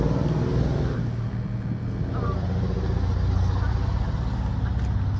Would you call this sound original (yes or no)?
yes